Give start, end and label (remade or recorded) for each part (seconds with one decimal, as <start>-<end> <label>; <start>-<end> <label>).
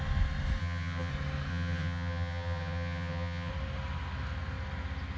0.0-0.6 recorded; 0.6-1.1 remade; 1.1-1.5 recorded; 1.5-3.5 remade; 3.5-5.2 recorded